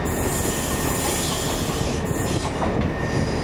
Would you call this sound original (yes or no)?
yes